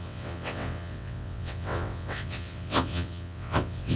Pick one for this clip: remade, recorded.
remade